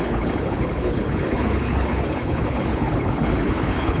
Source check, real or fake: fake